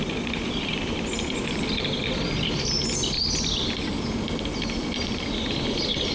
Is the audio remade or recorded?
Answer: recorded